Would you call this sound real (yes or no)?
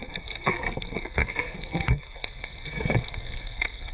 no